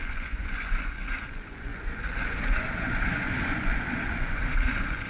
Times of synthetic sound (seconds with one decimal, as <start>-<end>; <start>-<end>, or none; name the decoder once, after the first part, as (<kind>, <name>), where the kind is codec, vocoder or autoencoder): 0.0-5.1 (vocoder, Vocos)